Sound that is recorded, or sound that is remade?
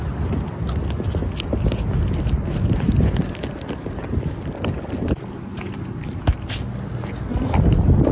recorded